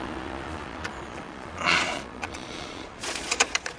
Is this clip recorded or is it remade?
remade